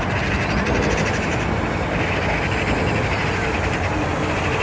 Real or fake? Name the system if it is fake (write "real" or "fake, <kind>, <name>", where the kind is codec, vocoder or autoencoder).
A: fake, vocoder, BigVGAN v2